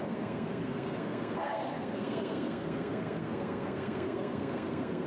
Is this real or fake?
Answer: fake